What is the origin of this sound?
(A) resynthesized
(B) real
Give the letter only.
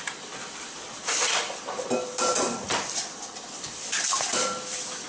A